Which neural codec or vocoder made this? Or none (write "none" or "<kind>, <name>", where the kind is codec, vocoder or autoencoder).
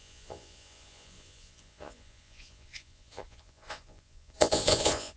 vocoder, Vocos